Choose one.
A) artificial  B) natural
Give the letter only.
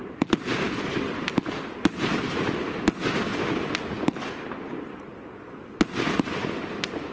B